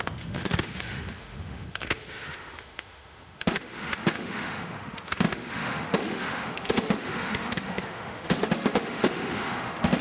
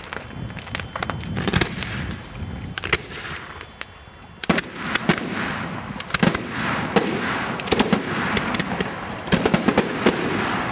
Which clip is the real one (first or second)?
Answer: second